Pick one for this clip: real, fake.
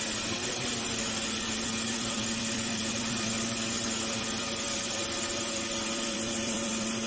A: fake